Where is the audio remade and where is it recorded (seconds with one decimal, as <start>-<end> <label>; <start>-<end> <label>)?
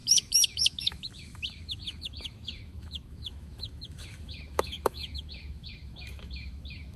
0.0-7.0 remade